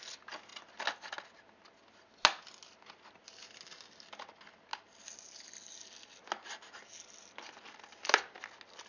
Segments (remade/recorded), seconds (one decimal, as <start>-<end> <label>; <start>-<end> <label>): 0.0-8.9 recorded